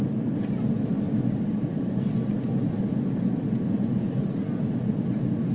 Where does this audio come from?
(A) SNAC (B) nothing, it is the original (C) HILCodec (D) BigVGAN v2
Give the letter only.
B